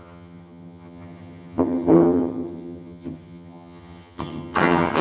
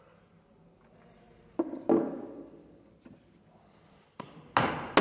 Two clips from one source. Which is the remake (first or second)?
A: first